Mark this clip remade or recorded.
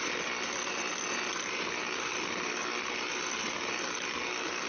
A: recorded